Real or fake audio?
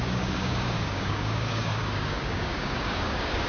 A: fake